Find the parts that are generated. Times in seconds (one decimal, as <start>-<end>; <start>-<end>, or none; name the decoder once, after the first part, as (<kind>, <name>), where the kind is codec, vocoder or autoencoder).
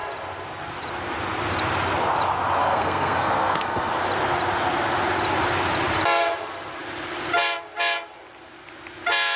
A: 2.6-3.9 (codec, SNAC)